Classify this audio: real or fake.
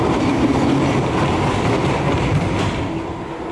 real